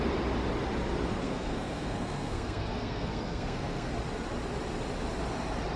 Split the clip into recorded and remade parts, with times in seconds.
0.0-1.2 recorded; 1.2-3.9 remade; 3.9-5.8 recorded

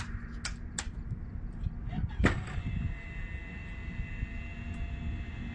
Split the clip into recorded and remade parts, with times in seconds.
0.0-5.5 recorded